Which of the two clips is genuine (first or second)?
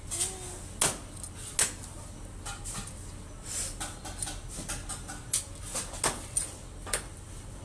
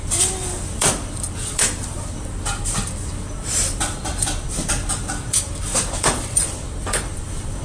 first